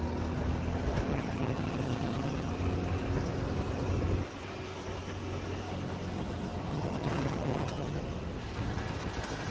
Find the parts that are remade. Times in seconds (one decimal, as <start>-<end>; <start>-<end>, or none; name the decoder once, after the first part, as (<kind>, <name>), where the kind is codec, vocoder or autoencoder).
1.1-2.5 (vocoder, HiFi-GAN); 6.7-8.0